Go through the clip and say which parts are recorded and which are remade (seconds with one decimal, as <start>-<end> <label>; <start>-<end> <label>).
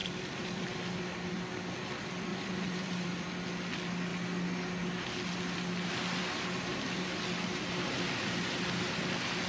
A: 0.0-1.3 remade; 1.3-2.3 recorded; 2.3-3.3 remade; 3.3-6.7 recorded; 6.7-7.6 remade; 7.6-9.5 recorded